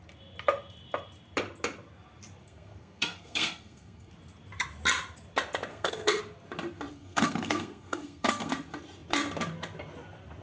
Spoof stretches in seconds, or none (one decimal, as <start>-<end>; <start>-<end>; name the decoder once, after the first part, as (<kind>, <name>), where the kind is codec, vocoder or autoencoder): 2.4-4.1 (codec, SNAC); 5.7-6.2; 6.9-8.5